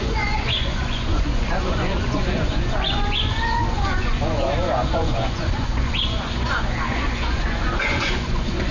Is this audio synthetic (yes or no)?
yes